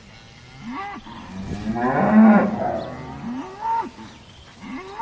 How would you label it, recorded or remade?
recorded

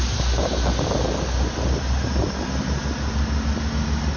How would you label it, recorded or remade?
recorded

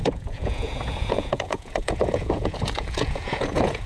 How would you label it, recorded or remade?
remade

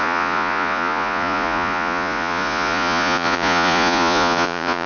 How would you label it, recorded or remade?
remade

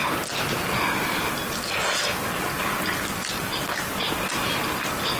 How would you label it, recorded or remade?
recorded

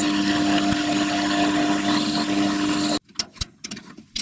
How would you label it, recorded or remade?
recorded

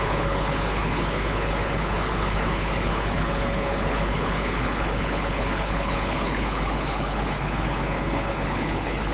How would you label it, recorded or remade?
remade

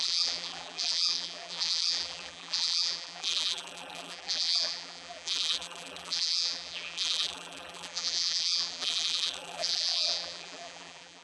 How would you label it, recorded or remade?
remade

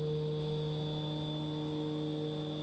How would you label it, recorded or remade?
recorded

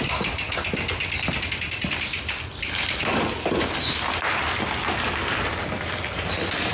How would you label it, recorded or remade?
recorded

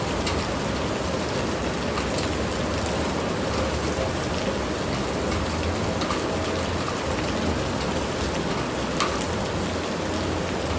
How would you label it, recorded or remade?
recorded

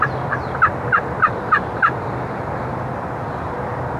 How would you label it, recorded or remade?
recorded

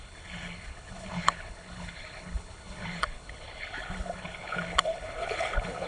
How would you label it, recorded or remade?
remade